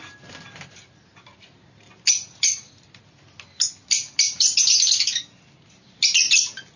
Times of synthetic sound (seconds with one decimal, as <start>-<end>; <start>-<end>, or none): none